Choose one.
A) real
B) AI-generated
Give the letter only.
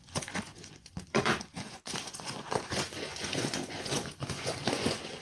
B